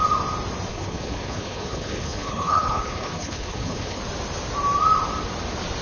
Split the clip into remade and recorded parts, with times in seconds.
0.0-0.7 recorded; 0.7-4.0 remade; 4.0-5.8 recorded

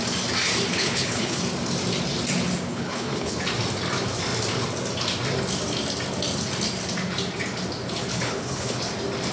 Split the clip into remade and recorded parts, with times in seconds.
0.0-0.7 recorded; 0.7-1.4 remade; 1.4-2.7 recorded; 2.7-3.4 remade; 3.4-8.1 recorded; 8.1-8.8 remade; 8.8-9.3 recorded

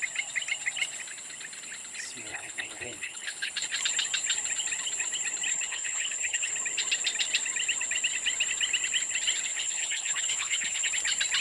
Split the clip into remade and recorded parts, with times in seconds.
0.0-2.3 recorded; 2.3-3.5 remade; 3.5-5.5 recorded; 5.5-6.5 remade; 6.5-9.5 recorded; 9.5-10.9 remade; 10.9-11.4 recorded

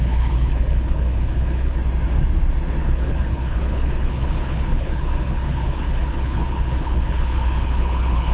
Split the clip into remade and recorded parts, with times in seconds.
0.0-1.8 remade; 1.8-2.8 recorded; 2.8-8.3 remade